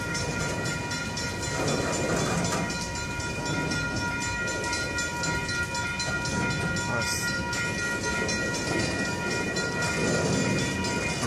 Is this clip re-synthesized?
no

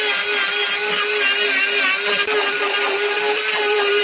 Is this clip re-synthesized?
no